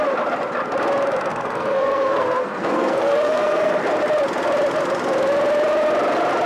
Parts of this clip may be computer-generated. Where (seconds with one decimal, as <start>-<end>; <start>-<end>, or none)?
1.3-3.8